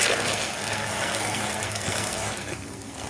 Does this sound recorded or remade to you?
remade